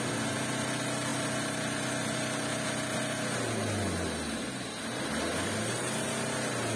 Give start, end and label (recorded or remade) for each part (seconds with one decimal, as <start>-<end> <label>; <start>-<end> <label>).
0.0-6.8 recorded